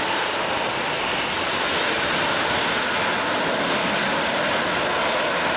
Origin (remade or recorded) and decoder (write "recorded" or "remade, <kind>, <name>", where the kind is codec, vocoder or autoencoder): recorded